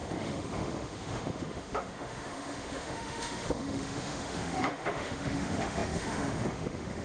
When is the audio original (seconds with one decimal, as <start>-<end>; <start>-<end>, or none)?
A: none